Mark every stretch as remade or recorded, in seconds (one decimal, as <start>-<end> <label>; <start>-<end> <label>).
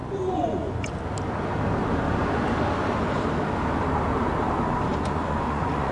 0.0-0.9 remade; 0.9-4.9 recorded; 4.9-5.9 remade